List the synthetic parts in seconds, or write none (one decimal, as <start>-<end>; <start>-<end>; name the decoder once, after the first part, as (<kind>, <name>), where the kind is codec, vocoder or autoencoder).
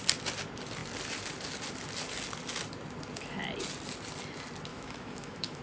4.7-5.6 (autoencoder, DAC-VAE)